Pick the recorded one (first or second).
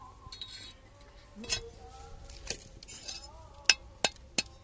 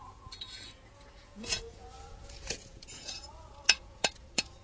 first